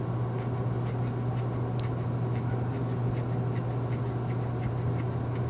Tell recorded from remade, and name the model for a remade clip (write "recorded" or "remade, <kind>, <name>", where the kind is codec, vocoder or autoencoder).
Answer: recorded